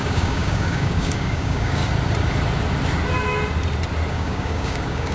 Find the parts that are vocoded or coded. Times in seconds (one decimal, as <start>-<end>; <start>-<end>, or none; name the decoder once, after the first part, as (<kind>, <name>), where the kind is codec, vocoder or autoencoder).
0.0-1.8 (codec, DAC); 4.1-5.1